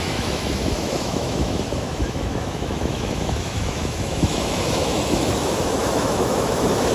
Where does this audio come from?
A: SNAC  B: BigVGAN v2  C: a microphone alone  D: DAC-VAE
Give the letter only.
D